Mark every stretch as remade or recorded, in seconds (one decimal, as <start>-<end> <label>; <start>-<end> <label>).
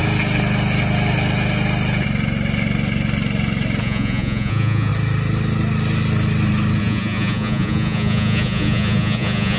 0.0-3.8 recorded; 3.8-4.9 remade; 4.9-6.8 recorded; 6.8-9.6 remade